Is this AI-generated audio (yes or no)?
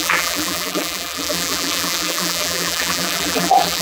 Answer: yes